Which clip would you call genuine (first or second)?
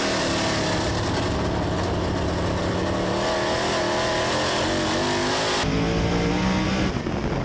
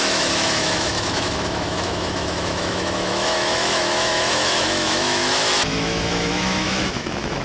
first